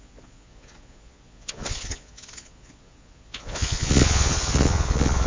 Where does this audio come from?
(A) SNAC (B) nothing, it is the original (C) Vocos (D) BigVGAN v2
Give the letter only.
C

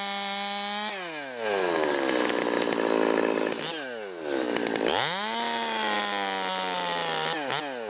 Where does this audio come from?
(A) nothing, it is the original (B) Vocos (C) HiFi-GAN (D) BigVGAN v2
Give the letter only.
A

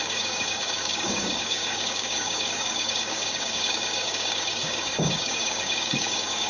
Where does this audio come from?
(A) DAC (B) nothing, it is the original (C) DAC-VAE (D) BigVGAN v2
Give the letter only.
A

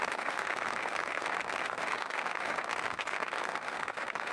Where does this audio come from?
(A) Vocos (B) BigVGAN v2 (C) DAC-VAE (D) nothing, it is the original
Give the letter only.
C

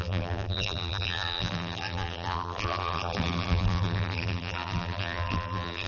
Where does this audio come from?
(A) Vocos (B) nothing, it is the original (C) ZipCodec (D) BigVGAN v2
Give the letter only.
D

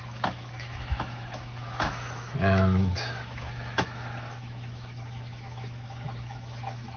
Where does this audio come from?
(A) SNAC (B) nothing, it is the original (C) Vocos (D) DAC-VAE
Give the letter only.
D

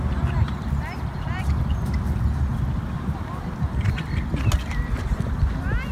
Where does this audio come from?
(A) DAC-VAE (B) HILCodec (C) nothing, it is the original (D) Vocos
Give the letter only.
C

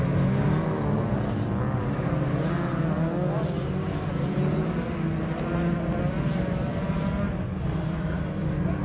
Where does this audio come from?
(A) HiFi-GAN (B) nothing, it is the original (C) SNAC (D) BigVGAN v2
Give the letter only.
B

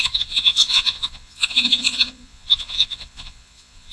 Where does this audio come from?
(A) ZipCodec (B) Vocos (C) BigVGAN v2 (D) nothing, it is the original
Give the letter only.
B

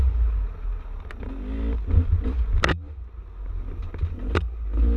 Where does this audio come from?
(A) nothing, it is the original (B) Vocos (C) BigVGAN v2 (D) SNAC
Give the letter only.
A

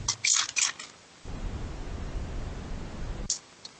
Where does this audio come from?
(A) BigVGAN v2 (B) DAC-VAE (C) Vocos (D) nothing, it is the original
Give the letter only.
D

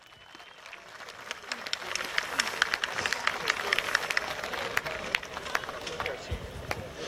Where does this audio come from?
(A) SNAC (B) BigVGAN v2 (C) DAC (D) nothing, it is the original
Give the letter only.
D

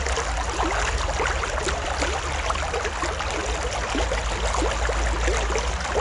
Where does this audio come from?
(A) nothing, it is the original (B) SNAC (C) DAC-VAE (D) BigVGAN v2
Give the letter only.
A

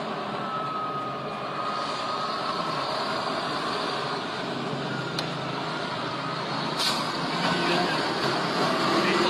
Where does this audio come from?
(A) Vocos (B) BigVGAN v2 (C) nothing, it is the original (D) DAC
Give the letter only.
B